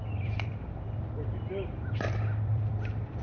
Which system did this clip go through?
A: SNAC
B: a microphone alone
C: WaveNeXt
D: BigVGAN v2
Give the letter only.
D